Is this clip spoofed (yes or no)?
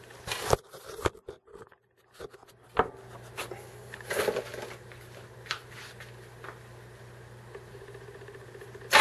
no